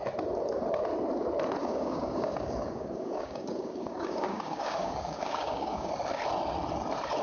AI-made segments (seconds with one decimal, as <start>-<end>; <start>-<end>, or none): 1.6-5.9